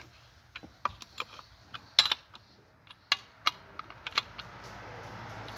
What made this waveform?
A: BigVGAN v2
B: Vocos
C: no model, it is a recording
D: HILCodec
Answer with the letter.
C